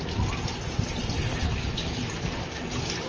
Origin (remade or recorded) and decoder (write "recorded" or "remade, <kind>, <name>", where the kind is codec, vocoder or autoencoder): recorded